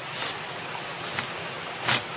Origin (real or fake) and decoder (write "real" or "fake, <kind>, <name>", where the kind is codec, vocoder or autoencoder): real